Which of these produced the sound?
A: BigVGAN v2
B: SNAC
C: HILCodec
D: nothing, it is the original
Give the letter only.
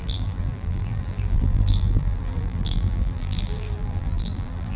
A